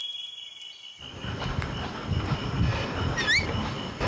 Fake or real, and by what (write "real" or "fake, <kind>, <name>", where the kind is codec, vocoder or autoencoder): real